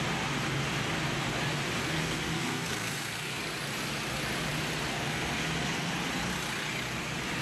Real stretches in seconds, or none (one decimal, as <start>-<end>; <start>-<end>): 0.0-1.8; 3.4-4.9; 5.9-7.4